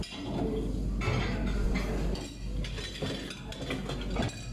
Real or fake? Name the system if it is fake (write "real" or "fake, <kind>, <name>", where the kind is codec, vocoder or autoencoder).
real